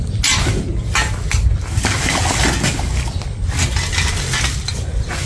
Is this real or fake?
real